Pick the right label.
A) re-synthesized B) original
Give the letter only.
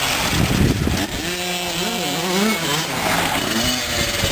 B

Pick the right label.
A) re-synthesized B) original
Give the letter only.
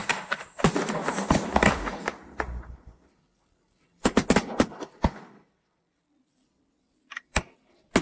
B